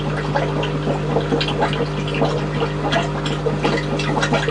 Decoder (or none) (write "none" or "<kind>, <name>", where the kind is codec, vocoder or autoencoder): none